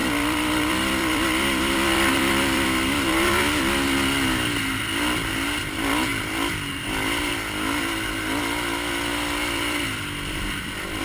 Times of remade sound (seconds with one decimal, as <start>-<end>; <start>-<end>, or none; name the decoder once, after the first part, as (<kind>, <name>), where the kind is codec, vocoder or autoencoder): 0.0-3.4 (vocoder, BigVGAN v2); 6.1-7.3; 9.1-11.0